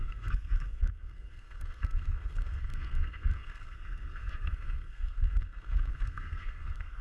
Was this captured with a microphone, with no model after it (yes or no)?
no